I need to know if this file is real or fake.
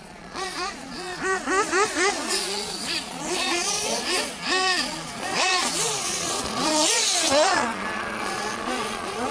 fake